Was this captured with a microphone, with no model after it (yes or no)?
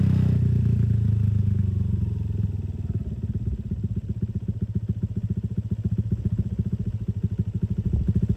yes